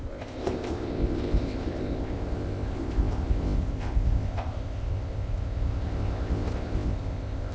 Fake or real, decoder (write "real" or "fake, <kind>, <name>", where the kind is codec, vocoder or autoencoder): fake, codec, ZipCodec